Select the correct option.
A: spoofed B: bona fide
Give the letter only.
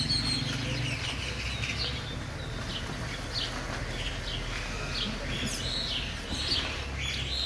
B